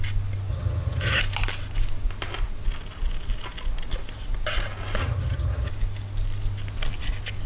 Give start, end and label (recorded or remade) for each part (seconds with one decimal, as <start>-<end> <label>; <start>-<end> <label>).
0.0-0.5 recorded; 0.5-1.2 remade; 1.2-5.0 recorded; 5.0-5.7 remade; 5.7-7.5 recorded